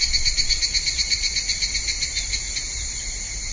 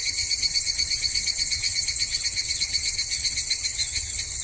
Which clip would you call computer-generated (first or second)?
second